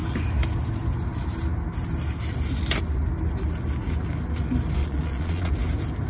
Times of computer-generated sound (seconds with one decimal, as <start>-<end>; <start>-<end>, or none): 4.8-5.5